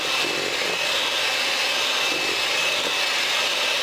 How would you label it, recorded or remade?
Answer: recorded